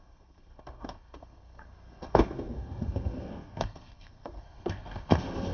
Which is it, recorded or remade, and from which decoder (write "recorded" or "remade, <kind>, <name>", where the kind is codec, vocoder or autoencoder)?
remade, codec, SNAC